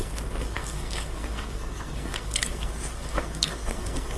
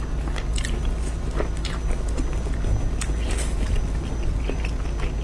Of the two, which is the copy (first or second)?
first